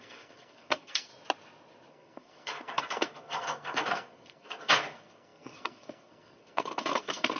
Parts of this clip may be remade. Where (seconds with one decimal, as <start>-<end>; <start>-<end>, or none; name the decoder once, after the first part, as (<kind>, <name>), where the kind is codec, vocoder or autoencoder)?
0.0-1.1 (codec, SNAC); 1.9-7.4